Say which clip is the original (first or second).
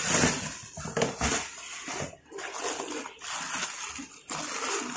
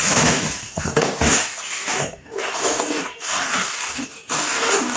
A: first